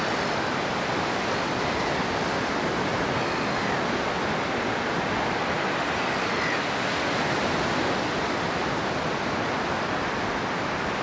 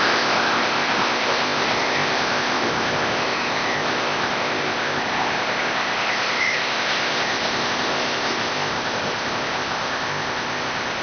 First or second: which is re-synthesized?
second